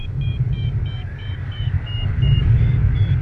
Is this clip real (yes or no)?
no